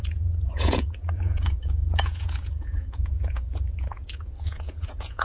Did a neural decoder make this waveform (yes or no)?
yes